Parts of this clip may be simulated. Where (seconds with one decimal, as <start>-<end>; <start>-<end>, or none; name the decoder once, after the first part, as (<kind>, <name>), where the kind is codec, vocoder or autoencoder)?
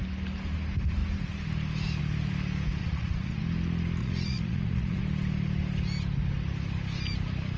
2.8-3.4 (vocoder, Vocos); 4.0-5.0